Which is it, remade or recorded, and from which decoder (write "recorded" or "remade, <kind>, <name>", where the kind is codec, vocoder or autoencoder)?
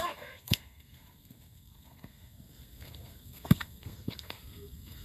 remade, codec, SNAC